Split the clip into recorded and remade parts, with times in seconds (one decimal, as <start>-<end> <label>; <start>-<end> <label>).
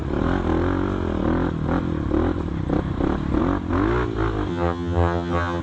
0.0-4.5 recorded; 4.5-5.6 remade